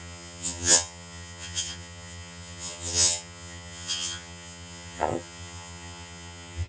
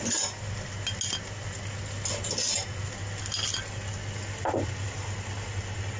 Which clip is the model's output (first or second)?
first